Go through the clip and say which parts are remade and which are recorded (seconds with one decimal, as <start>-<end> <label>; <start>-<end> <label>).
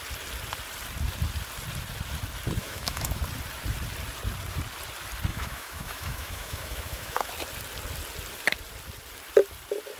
0.0-2.6 recorded; 2.6-3.2 remade; 3.2-5.3 recorded; 5.3-7.3 remade; 7.3-10.0 recorded